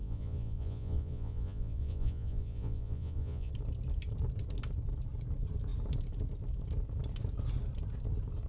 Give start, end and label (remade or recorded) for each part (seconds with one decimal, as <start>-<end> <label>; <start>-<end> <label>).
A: 0.0-3.5 remade; 3.5-8.5 recorded